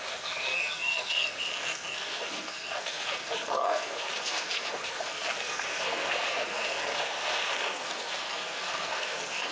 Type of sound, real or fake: fake